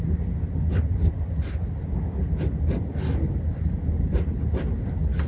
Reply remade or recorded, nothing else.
recorded